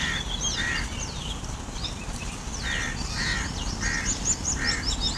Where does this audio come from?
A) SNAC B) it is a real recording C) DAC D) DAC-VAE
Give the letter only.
B